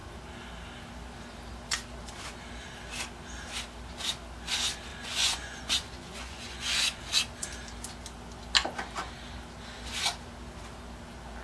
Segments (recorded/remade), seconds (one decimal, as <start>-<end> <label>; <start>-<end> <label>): 0.0-4.9 recorded; 4.9-7.0 remade; 7.0-11.4 recorded